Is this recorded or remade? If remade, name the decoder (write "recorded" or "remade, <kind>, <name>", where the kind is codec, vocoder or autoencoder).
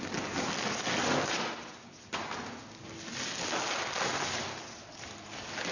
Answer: recorded